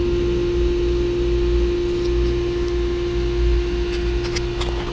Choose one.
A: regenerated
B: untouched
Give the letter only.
B